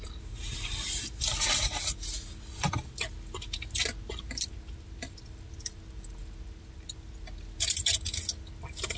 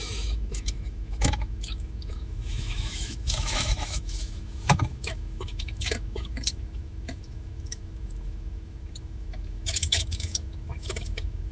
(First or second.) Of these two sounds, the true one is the first